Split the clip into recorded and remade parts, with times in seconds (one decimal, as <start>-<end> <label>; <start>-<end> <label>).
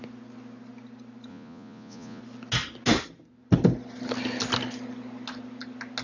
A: 0.0-1.3 recorded; 1.3-2.2 remade; 2.2-6.0 recorded